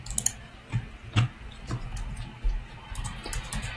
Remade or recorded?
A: recorded